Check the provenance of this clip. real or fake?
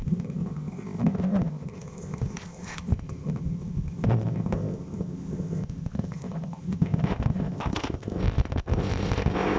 fake